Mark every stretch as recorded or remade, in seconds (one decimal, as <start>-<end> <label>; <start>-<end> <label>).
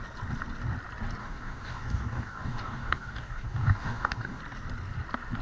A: 0.0-1.2 recorded; 1.2-4.4 remade; 4.4-5.4 recorded